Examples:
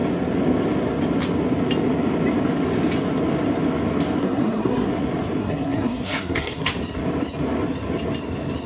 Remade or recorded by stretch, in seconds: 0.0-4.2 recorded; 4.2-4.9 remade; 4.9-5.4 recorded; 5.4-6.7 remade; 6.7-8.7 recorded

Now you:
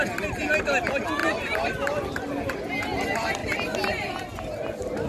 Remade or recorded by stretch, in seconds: 0.0-5.1 recorded

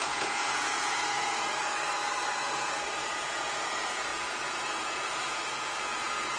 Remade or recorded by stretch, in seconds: 0.0-1.5 remade; 1.5-2.4 recorded; 2.4-6.4 remade